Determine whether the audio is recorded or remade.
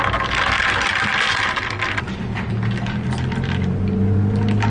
recorded